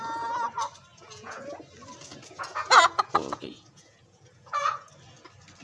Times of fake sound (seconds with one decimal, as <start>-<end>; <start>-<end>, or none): 0.9-1.5; 2.1-4.9